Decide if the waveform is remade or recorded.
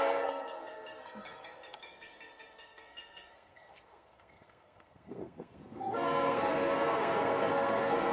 remade